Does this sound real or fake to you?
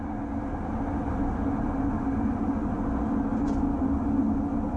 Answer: real